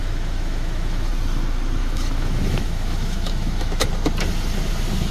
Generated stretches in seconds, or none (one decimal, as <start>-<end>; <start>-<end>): 0.0-1.1; 1.8-3.9